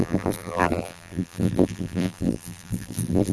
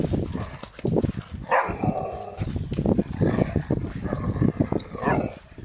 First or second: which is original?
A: second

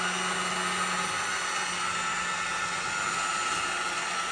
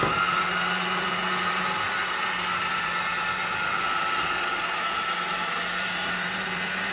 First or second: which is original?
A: first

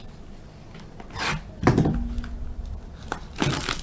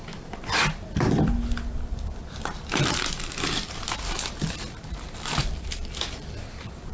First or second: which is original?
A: first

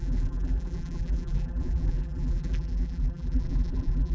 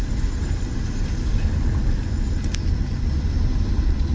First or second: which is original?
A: second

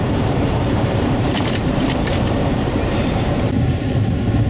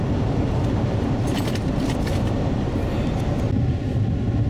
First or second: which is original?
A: second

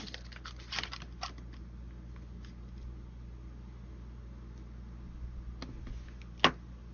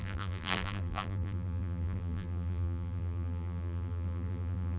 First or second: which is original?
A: first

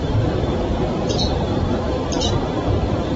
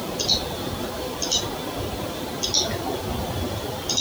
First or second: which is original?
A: second